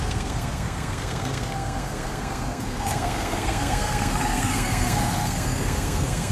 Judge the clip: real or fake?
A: fake